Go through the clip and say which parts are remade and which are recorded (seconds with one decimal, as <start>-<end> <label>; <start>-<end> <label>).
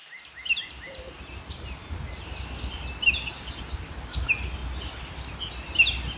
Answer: 0.0-6.2 recorded